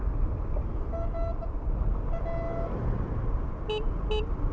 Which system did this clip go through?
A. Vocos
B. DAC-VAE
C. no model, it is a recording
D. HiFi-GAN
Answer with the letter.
C